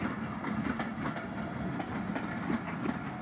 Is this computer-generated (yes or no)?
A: no